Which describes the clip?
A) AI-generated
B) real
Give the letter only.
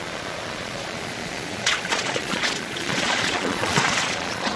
A